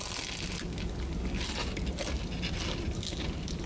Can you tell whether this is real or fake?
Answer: real